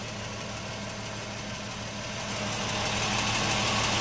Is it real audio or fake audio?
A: real